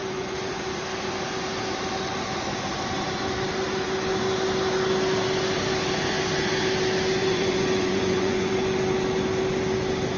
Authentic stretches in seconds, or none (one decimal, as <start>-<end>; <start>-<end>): 0.6-7.2; 8.5-10.2